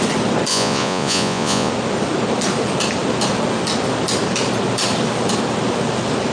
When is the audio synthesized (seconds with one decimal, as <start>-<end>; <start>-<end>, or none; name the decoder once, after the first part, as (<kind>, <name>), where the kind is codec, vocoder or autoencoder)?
0.5-1.7 (vocoder, Vocos)